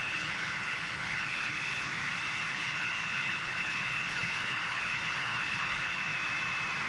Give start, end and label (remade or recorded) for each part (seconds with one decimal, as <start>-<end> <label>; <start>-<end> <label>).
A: 0.0-1.9 remade; 1.9-2.5 recorded; 2.5-6.1 remade; 6.1-6.9 recorded